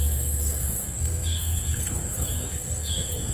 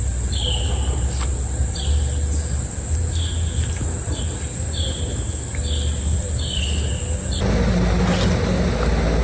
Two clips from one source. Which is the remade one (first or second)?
first